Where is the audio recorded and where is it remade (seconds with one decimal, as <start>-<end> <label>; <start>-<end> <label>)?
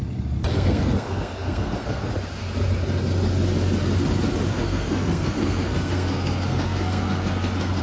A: 0.0-0.5 recorded; 0.5-2.1 remade; 2.1-4.5 recorded; 4.5-7.8 remade